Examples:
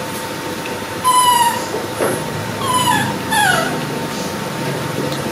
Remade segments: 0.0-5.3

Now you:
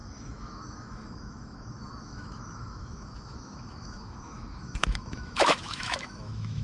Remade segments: 0.0-6.6

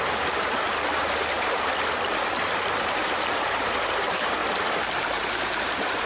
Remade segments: 0.0-1.7; 2.8-4.4; 5.0-6.1